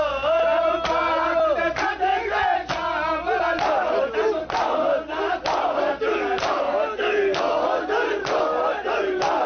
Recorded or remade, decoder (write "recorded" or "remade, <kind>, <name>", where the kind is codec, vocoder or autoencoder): recorded